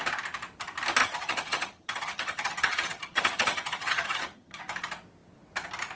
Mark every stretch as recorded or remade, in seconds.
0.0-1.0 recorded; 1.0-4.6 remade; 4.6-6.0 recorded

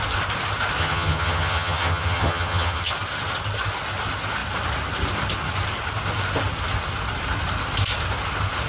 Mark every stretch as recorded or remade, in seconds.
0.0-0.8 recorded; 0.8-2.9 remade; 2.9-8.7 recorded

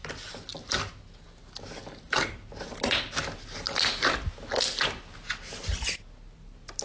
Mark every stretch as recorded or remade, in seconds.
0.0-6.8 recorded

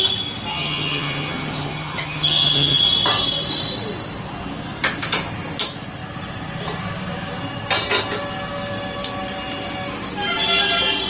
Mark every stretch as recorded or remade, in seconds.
0.0-0.5 recorded; 0.5-2.8 remade; 2.8-11.1 recorded

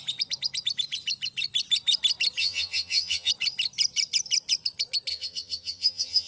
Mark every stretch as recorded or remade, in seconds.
0.0-2.4 recorded; 2.4-3.3 remade; 3.3-5.1 recorded; 5.1-6.3 remade

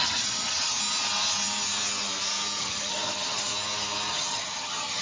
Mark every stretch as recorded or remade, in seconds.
0.0-0.8 remade; 0.8-2.6 recorded; 2.6-3.5 remade; 3.5-4.1 recorded; 4.1-5.0 remade